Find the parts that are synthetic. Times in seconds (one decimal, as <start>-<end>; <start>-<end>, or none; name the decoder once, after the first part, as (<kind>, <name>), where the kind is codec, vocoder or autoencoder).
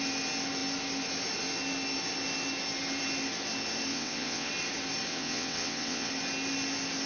3.9-4.5 (vocoder, WaveNeXt); 5.1-6.1